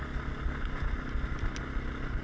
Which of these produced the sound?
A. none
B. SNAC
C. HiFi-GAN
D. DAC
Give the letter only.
A